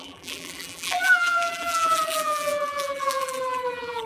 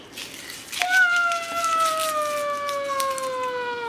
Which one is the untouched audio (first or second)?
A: second